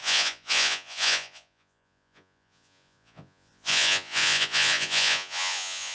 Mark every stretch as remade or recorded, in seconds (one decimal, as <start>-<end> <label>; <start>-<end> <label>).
0.0-5.9 remade

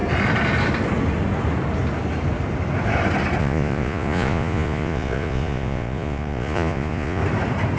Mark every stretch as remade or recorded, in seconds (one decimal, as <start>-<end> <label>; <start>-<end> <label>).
0.0-3.4 recorded; 3.4-7.2 remade; 7.2-7.8 recorded

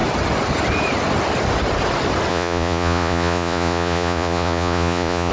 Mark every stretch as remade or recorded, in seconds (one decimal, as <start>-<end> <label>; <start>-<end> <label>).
0.0-2.3 recorded; 2.3-5.3 remade

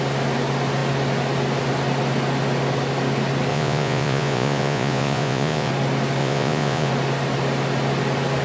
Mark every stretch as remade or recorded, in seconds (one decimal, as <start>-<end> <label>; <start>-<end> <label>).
0.0-3.5 recorded; 3.5-5.7 remade; 5.7-6.2 recorded; 6.2-6.9 remade; 6.9-8.4 recorded

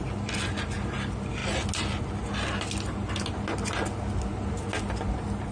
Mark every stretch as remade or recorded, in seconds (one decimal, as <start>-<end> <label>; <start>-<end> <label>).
0.0-5.5 recorded